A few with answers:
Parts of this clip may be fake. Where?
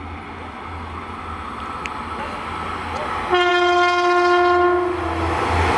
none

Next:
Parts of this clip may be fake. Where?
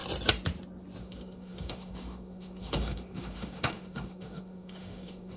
1.0-5.4 (autoencoder, DAC-VAE)